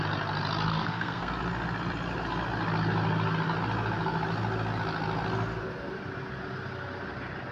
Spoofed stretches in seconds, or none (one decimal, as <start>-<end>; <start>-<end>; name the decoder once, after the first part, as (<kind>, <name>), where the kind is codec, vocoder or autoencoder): 0.7-1.3 (codec, SNAC)